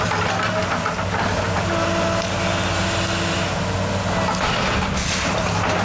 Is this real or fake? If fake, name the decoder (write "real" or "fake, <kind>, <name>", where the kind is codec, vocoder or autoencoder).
real